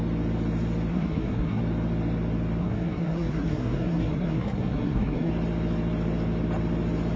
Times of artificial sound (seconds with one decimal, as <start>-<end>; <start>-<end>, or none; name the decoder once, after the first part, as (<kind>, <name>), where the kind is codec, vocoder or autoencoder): 0.9-1.6 (codec, SNAC); 2.6-5.3